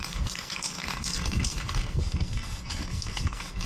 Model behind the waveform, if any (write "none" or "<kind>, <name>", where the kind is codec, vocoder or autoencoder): codec, SNAC